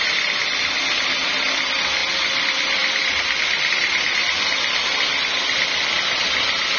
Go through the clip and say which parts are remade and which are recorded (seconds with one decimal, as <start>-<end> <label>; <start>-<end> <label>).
0.0-6.8 recorded